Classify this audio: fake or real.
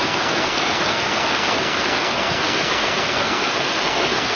fake